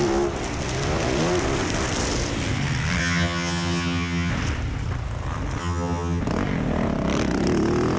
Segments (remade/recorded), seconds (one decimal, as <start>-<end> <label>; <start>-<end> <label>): 0.0-3.0 recorded; 3.0-4.3 remade; 4.3-5.6 recorded; 5.6-6.2 remade; 6.2-8.0 recorded